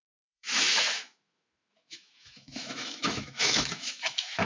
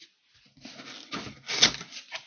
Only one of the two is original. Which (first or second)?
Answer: second